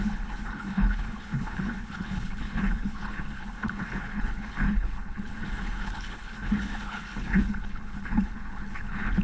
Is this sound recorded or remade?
remade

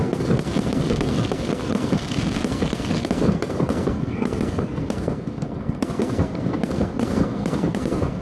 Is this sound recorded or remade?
remade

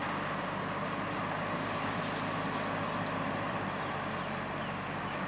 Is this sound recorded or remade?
recorded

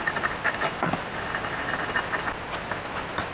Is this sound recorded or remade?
recorded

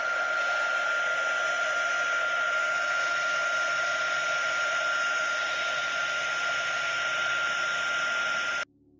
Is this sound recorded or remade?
recorded